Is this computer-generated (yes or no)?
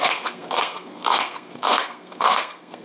yes